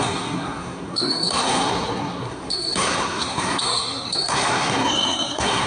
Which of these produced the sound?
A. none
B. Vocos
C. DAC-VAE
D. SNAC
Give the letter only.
D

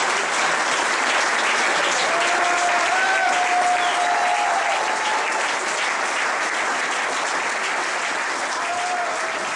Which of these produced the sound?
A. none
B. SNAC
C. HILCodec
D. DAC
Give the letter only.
A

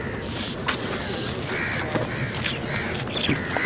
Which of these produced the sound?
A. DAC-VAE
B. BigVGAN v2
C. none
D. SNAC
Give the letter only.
C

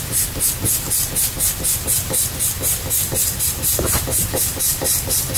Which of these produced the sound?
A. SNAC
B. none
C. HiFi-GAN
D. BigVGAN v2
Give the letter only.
B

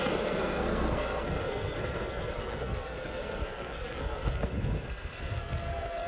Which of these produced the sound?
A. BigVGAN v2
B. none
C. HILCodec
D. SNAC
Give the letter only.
D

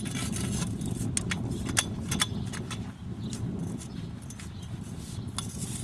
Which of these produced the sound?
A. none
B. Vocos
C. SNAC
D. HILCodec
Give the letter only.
A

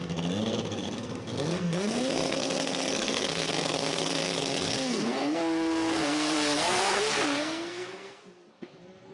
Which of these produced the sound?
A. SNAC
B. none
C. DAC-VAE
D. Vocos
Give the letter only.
A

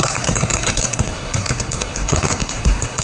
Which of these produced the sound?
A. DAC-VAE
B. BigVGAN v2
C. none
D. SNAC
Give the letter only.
D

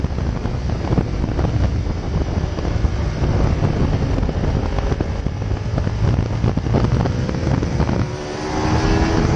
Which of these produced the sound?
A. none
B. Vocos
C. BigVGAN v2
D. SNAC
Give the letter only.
A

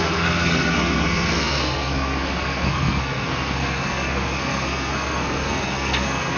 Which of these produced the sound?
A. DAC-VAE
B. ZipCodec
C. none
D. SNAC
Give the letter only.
D